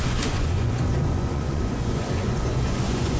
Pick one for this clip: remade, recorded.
remade